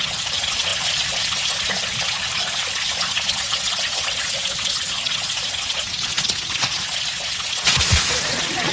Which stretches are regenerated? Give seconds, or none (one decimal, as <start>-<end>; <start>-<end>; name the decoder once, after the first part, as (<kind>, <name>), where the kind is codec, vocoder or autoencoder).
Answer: 0.0-8.7 (vocoder, Vocos)